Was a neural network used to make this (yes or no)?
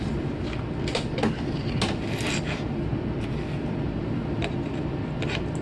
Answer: no